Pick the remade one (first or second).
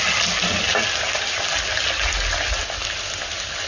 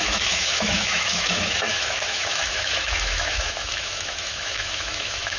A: second